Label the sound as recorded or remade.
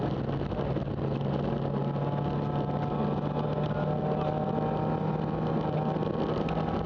recorded